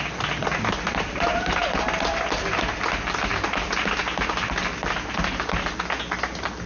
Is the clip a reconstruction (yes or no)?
no